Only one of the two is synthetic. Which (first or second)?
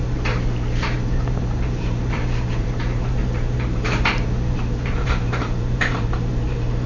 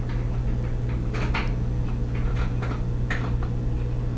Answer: first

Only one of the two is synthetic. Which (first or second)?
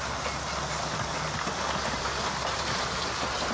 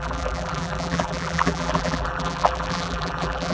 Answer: second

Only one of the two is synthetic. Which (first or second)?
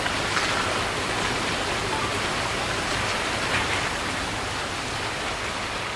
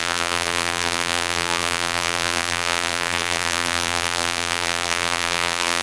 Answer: second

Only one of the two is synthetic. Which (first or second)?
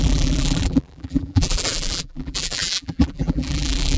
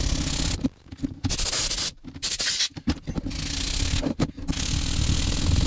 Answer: first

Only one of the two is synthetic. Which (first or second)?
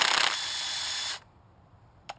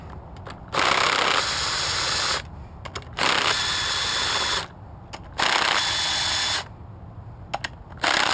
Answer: first